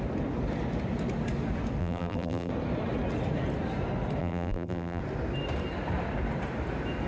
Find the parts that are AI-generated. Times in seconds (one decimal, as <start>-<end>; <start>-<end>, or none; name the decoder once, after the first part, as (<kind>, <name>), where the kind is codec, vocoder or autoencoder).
1.8-2.5 (vocoder, BigVGAN v2); 4.2-5.0